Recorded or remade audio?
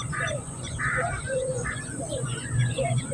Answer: remade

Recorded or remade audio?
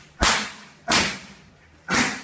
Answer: remade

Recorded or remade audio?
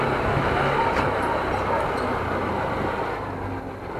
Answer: recorded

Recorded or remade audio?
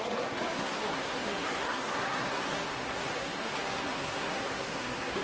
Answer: remade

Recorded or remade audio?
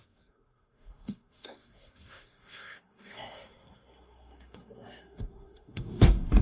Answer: remade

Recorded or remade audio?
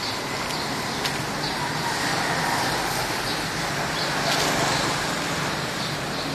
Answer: recorded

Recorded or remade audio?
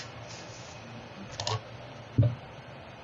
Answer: recorded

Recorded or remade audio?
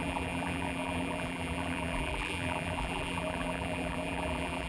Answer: remade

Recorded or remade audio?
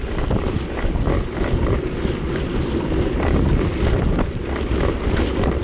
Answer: remade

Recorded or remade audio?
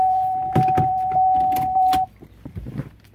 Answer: remade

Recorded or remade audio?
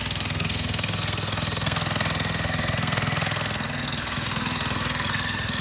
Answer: remade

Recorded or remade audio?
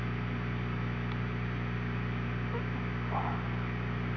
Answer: recorded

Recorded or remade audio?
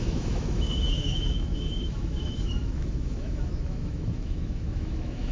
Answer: remade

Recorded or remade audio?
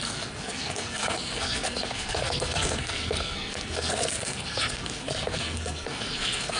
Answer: remade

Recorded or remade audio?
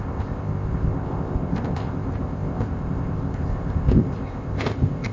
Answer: remade